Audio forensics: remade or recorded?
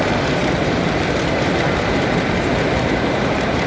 remade